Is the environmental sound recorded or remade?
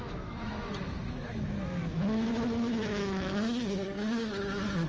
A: remade